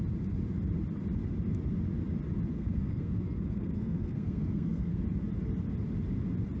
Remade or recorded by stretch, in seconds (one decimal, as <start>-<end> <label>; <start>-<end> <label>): 0.0-2.5 recorded; 2.5-5.0 remade; 5.0-6.6 recorded